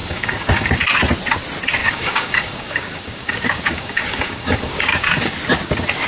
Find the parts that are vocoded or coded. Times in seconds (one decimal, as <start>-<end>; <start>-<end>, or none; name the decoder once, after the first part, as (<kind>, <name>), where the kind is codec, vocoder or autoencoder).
0.0-0.7 (codec, DAC); 1.8-5.3